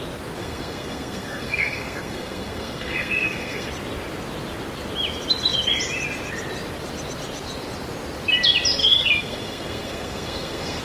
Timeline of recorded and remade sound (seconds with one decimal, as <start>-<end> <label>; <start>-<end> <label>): 0.0-0.4 recorded; 0.4-3.7 remade; 3.7-8.8 recorded; 8.8-10.8 remade